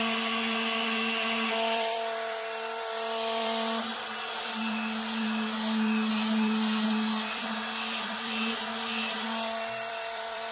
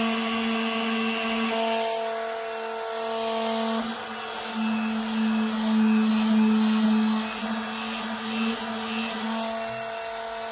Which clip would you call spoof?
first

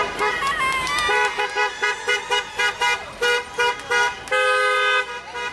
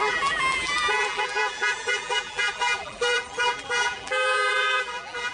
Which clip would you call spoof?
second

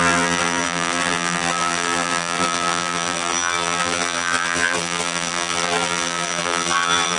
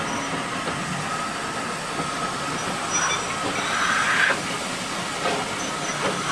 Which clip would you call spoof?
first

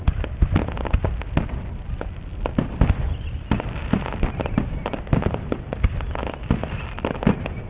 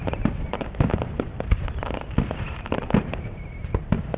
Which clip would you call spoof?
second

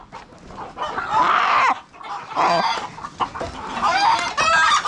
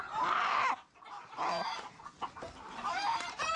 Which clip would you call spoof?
second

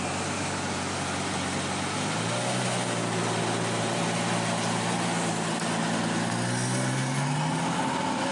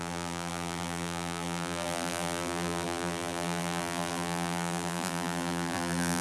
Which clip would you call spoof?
second